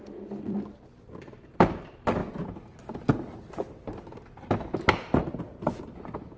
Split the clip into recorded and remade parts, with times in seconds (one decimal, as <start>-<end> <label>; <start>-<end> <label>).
0.0-2.2 remade; 2.2-5.4 recorded; 5.4-6.4 remade